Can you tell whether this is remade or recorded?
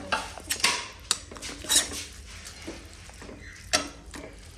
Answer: recorded